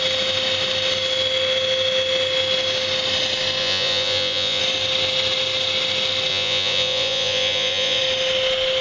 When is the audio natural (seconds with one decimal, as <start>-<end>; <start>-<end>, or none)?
0.0-3.6; 4.6-6.3; 8.0-8.8